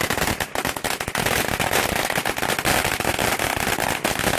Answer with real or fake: real